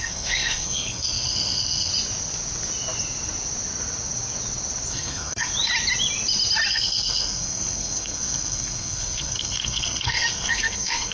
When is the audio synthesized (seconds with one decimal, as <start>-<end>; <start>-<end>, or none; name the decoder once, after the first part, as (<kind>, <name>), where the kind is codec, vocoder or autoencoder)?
0.0-1.9 (codec, SNAC); 4.9-5.5; 6.7-11.1